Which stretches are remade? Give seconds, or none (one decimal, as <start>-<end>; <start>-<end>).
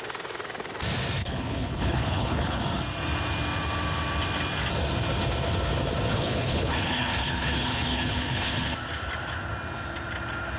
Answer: 1.2-2.6; 6.1-8.7